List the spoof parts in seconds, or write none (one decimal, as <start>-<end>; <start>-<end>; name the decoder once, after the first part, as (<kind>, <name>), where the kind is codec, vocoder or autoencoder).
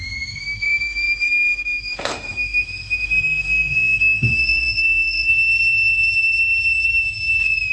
0.0-5.3 (autoencoder, DAC-VAE)